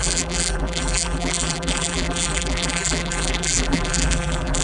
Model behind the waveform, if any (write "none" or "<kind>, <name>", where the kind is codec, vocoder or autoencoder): vocoder, BigVGAN v2